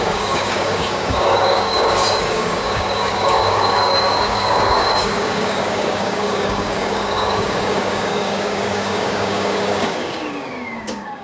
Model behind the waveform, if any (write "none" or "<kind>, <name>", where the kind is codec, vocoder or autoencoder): codec, DAC